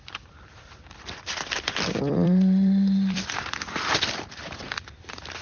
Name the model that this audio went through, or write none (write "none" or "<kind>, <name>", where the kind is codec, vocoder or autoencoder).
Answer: vocoder, BigVGAN v2